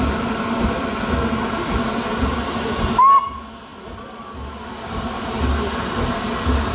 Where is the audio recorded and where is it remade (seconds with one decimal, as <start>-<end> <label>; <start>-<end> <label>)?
0.0-6.7 recorded